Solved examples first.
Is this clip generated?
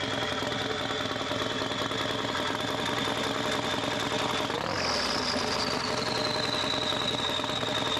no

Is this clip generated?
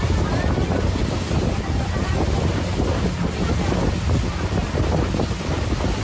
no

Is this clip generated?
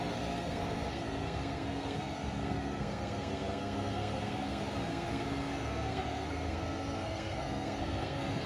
yes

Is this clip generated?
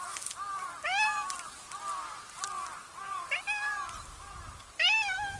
no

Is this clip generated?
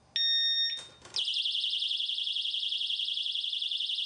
no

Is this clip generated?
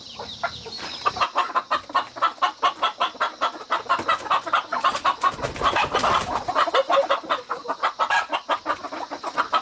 no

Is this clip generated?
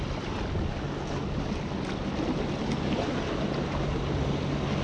no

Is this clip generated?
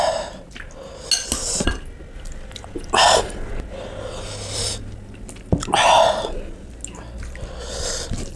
no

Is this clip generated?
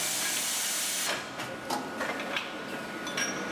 no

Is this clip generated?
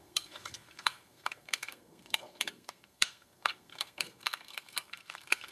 yes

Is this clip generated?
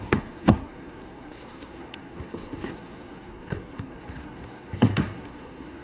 yes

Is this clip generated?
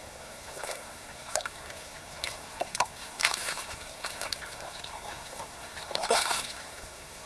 yes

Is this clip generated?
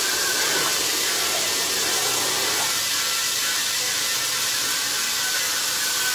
no